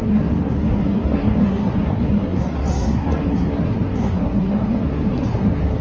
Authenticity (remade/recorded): remade